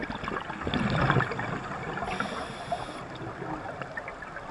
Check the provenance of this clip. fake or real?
real